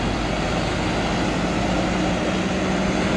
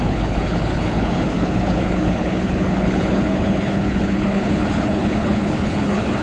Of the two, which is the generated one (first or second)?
second